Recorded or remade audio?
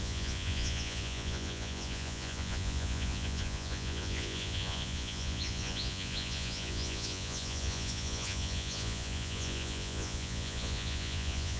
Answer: remade